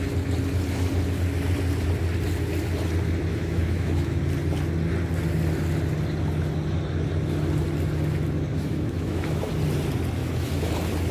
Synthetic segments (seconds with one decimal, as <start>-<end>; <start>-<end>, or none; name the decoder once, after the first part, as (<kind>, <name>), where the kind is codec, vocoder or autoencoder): 3.3-4.2 (autoencoder, DAC-VAE); 8.5-9.5; 10.2-10.7